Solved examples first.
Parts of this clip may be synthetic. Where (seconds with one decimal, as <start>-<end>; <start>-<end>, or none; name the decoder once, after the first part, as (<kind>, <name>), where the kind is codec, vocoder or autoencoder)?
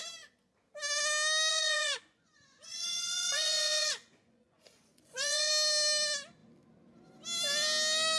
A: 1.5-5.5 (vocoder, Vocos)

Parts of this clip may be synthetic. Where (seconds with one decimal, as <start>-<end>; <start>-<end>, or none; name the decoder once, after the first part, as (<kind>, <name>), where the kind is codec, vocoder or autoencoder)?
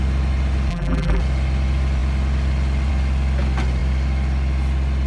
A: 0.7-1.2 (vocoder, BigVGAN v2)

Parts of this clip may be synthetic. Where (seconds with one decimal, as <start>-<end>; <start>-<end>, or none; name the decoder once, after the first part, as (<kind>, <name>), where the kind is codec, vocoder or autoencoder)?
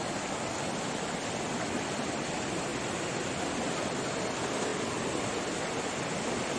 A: none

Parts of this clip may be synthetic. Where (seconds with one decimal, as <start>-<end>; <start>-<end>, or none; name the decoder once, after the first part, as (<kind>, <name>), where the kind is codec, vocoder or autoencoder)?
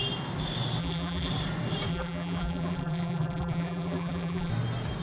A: 0.8-1.3 (vocoder, BigVGAN v2); 1.9-4.5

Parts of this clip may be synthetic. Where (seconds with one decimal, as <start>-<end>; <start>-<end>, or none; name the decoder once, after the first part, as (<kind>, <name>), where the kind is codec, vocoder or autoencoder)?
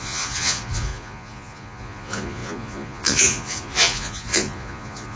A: 0.0-5.2 (vocoder, Vocos)